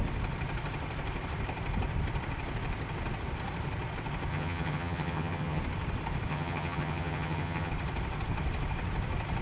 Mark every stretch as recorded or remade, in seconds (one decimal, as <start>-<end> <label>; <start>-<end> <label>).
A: 0.0-4.3 recorded; 4.3-5.6 remade; 5.6-6.3 recorded; 6.3-7.7 remade; 7.7-9.4 recorded